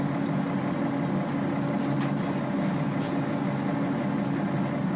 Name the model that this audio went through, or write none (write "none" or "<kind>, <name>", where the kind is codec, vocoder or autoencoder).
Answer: none